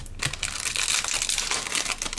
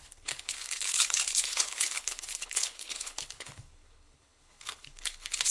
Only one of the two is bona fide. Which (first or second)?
first